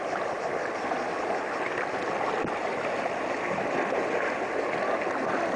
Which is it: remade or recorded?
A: recorded